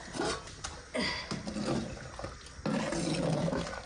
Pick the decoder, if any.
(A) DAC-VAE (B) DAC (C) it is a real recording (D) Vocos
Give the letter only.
C